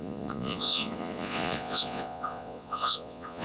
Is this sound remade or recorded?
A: remade